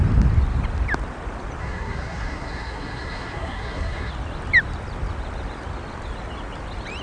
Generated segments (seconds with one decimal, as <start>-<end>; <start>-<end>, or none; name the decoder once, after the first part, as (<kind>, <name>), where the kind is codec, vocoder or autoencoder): 1.6-4.1 (codec, SNAC)